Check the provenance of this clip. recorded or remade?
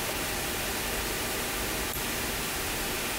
recorded